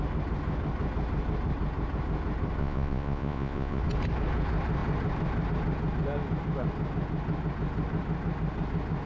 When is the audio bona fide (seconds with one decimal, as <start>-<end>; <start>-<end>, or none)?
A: 0.0-2.6; 3.8-9.1